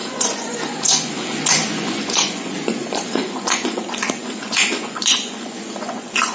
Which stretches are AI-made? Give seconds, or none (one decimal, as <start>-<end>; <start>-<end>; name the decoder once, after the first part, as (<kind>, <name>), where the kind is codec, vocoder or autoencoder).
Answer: 0.0-6.3 (vocoder, Vocos)